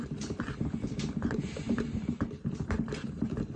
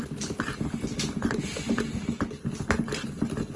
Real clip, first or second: second